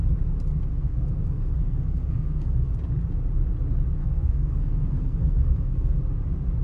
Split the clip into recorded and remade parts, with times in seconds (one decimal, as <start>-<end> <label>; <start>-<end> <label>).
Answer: 0.0-0.7 recorded; 0.7-2.7 remade; 2.7-4.0 recorded; 4.0-6.0 remade; 6.0-6.6 recorded